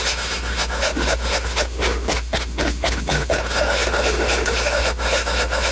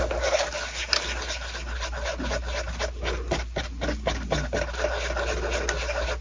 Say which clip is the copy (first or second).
first